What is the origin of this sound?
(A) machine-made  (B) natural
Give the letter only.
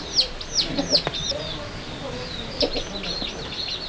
B